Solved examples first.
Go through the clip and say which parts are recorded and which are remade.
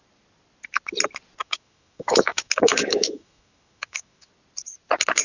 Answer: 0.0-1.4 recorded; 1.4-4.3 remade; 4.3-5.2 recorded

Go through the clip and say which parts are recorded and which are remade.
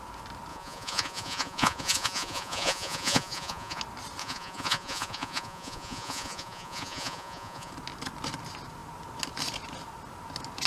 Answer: 0.0-0.5 recorded; 0.5-3.8 remade; 3.8-4.2 recorded; 4.2-7.7 remade; 7.7-10.7 recorded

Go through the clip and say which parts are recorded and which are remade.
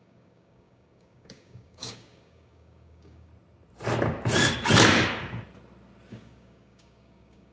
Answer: 0.0-3.3 remade; 3.3-6.1 recorded; 6.1-7.5 remade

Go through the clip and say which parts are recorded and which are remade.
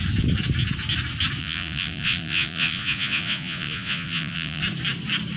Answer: 0.0-1.4 recorded; 1.4-4.6 remade; 4.6-5.4 recorded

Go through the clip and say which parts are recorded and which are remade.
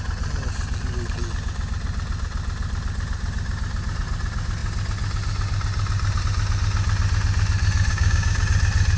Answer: 0.0-7.9 recorded; 7.9-8.4 remade; 8.4-9.0 recorded